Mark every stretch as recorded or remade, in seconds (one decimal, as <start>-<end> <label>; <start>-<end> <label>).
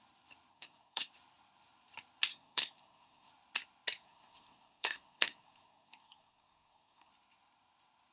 0.0-0.5 recorded; 0.5-1.1 remade; 1.1-2.3 recorded; 2.3-3.3 remade; 3.3-4.0 recorded; 4.0-7.1 remade; 7.1-8.1 recorded